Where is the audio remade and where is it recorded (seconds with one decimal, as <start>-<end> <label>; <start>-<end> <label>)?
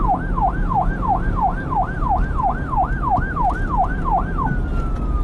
0.0-3.9 recorded; 3.9-4.5 remade; 4.5-5.2 recorded